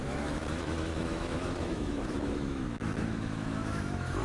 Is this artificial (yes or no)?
yes